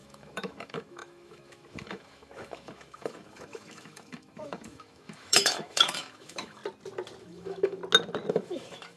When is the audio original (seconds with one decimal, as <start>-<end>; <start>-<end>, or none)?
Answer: 6.6-7.2; 7.8-8.3